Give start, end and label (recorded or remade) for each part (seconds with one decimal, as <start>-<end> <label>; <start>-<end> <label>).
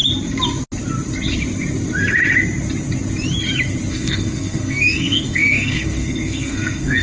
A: 0.0-3.9 recorded; 3.9-7.0 remade